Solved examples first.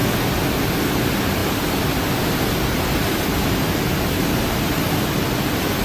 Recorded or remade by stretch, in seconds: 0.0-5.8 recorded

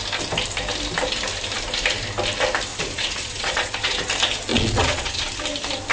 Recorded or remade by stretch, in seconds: 0.0-2.7 recorded; 2.7-4.0 remade; 4.0-4.5 recorded; 4.5-5.3 remade; 5.3-5.9 recorded